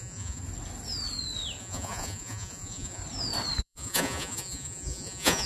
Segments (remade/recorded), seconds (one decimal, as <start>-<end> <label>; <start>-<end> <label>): 0.0-0.4 remade; 0.4-1.6 recorded; 1.6-3.0 remade; 3.0-3.6 recorded; 3.6-5.5 remade

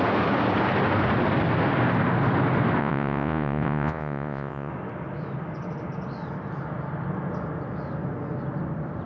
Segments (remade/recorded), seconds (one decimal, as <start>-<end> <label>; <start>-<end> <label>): 0.0-2.8 recorded; 2.8-4.7 remade; 4.7-9.1 recorded

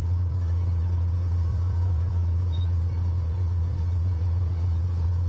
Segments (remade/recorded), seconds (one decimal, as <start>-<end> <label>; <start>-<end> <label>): 0.0-1.5 remade; 1.5-2.1 recorded; 2.1-5.3 remade

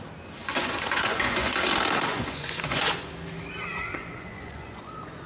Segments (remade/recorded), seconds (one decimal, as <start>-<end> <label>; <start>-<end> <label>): 0.0-0.4 recorded; 0.4-1.5 remade; 1.5-2.1 recorded; 2.1-3.1 remade; 3.1-3.7 recorded; 3.7-5.3 remade